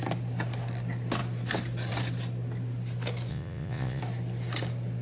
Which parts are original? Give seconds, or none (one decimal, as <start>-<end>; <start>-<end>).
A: 0.0-3.3; 4.0-5.0